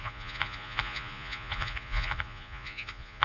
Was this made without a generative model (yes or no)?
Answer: no